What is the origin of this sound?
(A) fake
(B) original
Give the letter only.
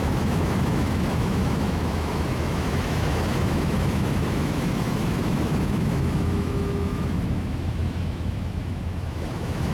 A